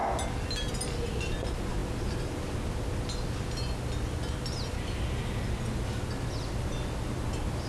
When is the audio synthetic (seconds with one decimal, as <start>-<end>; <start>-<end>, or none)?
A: none